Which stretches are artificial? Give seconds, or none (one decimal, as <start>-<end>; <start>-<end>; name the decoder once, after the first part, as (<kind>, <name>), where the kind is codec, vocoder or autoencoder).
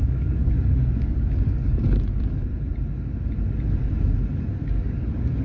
0.0-2.5 (codec, DAC); 4.4-5.4